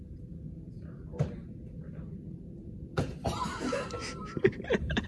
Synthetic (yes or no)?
yes